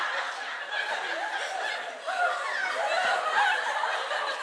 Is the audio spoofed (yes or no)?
no